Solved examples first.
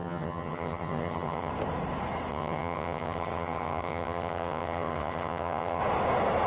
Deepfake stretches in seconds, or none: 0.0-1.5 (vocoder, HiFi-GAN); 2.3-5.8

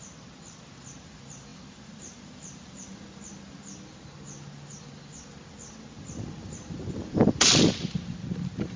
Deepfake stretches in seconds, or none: none

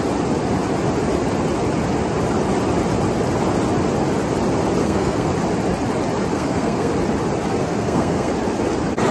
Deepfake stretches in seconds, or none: 4.8-5.3 (codec, SNAC); 6.3-6.9; 7.6-8.3